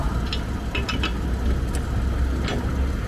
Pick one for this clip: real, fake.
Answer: real